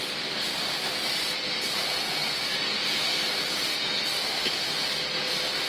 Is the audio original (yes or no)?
yes